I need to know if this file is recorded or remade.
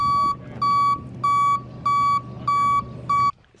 recorded